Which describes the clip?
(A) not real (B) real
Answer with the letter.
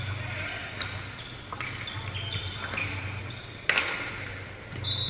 B